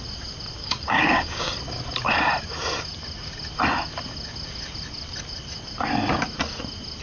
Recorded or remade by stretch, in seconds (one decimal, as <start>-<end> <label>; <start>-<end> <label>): 0.0-0.6 recorded; 0.6-1.5 remade; 1.5-7.0 recorded